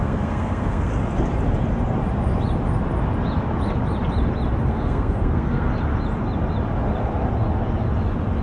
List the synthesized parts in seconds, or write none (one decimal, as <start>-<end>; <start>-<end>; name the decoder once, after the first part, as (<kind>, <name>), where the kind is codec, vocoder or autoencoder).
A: 0.0-0.9 (codec, SNAC); 4.7-5.7